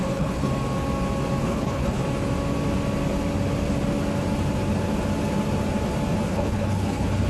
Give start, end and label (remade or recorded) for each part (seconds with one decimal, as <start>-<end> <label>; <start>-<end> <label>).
0.0-0.5 remade; 0.5-1.4 recorded; 1.4-2.0 remade; 2.0-6.3 recorded; 6.3-7.3 remade